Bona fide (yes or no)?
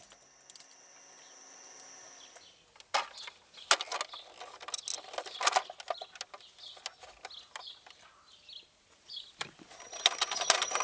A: yes